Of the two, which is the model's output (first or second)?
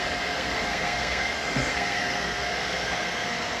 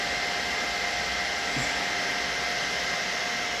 first